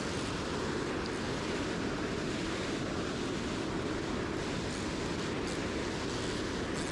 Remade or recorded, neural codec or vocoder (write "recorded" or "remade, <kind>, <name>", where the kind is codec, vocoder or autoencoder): recorded